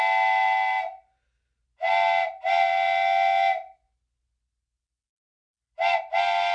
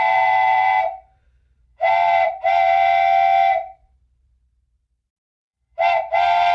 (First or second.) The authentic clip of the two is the first